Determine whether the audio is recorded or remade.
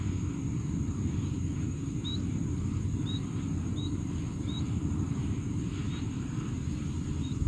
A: remade